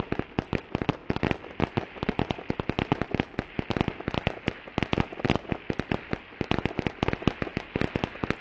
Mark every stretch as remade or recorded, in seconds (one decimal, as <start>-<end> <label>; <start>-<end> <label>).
0.0-8.4 recorded